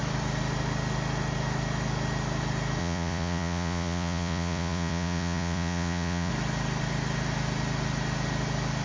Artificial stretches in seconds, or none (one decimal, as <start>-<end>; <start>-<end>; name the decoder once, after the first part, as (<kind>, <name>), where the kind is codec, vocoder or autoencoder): 2.8-6.3 (vocoder, Vocos)